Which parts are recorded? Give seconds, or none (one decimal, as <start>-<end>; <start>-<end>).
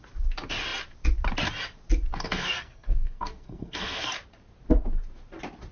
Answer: 0.0-2.1; 4.1-5.7